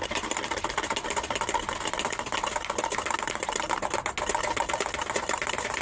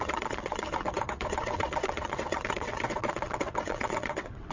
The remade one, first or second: second